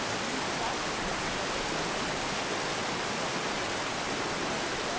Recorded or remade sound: recorded